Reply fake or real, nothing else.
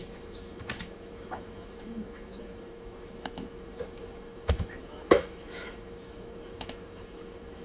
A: fake